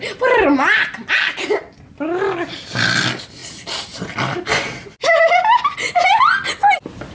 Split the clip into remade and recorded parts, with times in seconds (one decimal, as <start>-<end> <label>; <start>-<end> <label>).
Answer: 0.0-7.1 recorded

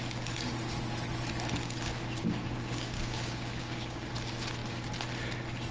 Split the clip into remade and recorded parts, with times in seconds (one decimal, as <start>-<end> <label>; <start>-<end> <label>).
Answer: 0.0-2.2 recorded; 2.2-4.1 remade; 4.1-5.7 recorded